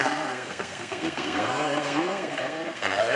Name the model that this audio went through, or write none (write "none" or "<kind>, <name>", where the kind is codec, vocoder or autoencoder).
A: codec, SNAC